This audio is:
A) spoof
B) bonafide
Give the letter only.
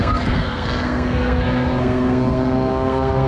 A